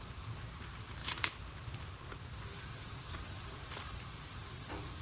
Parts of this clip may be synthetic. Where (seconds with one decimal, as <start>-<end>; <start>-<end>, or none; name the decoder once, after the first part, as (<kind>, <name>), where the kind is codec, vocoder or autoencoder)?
1.0-3.7 (vocoder, BigVGAN v2)